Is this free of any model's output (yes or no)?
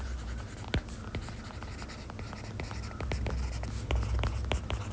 yes